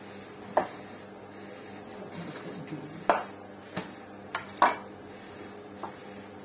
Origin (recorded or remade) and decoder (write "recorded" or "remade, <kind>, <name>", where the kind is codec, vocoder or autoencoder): recorded